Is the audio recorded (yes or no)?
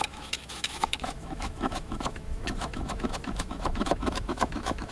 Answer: no